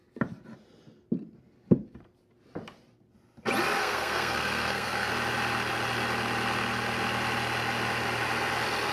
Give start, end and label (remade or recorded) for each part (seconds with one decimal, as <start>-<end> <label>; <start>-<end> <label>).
0.0-3.8 recorded; 3.8-5.1 remade; 5.1-8.9 recorded